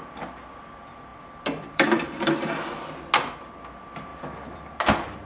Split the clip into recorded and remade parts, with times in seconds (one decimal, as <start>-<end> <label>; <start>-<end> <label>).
0.0-1.1 recorded; 1.1-2.9 remade; 2.9-4.1 recorded; 4.1-4.7 remade; 4.7-5.3 recorded